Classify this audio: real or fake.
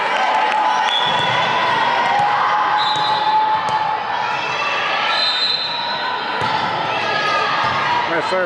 real